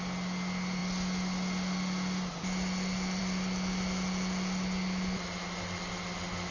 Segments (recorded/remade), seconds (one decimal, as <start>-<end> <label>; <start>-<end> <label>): 0.0-6.5 recorded